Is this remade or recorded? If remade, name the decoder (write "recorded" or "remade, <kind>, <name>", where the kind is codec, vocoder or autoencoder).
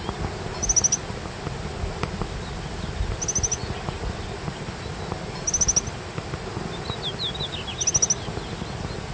recorded